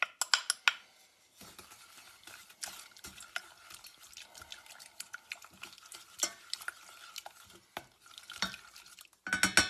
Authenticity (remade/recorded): recorded